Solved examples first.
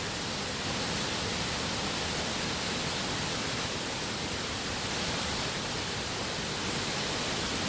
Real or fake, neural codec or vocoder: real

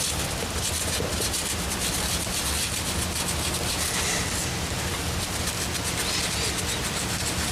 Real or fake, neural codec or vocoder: real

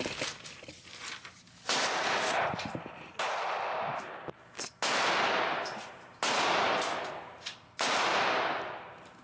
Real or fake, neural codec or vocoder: real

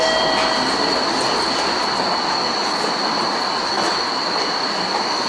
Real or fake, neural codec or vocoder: fake, vocoder, BigVGAN v2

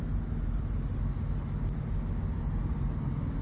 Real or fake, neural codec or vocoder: real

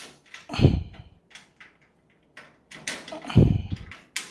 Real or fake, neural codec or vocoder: real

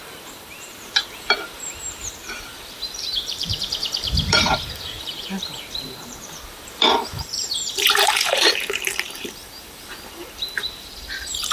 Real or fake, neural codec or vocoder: fake, vocoder, BigVGAN v2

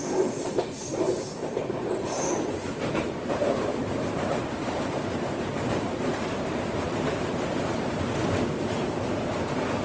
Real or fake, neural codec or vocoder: fake, vocoder, BigVGAN v2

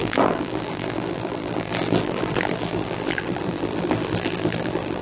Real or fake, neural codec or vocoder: fake, vocoder, BigVGAN v2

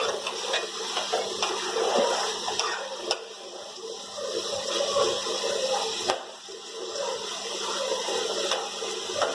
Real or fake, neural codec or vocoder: real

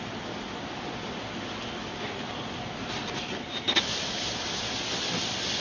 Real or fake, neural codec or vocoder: real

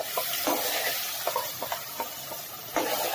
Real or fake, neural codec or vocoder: fake, vocoder, BigVGAN v2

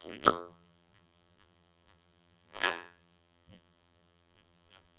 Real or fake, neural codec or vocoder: fake, vocoder, BigVGAN v2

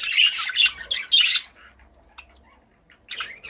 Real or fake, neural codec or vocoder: real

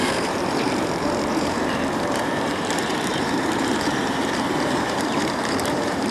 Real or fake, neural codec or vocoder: fake, vocoder, BigVGAN v2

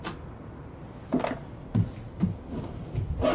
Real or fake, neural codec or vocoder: real